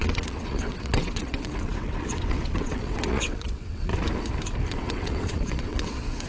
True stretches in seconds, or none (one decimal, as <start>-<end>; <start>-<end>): 3.9-4.7